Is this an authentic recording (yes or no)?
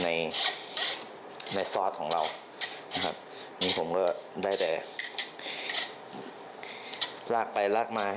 yes